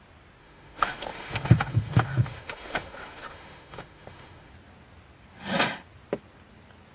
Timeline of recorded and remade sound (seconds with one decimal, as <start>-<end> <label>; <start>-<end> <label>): 0.0-0.4 recorded; 0.4-4.5 remade; 4.5-6.9 recorded